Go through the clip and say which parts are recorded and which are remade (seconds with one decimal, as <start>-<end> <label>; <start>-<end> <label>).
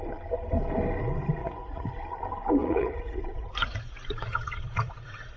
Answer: 0.0-1.4 recorded; 1.4-1.9 remade; 1.9-2.6 recorded; 2.6-5.4 remade